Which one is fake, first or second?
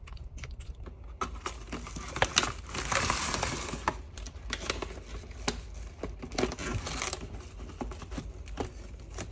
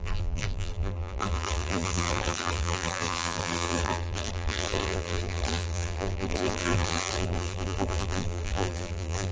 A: second